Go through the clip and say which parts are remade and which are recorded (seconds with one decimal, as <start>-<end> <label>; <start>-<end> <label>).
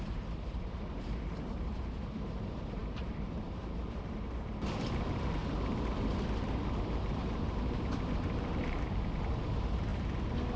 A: 0.0-5.4 remade; 5.4-6.0 recorded; 6.0-9.9 remade; 9.9-10.6 recorded